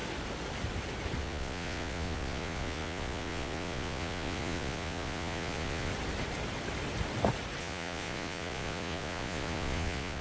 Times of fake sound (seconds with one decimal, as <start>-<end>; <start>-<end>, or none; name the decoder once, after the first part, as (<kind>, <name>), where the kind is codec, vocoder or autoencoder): 1.2-5.9 (vocoder, Vocos); 7.6-10.2